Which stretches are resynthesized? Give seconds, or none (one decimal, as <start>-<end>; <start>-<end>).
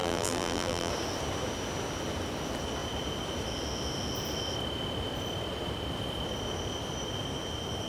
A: 0.0-0.9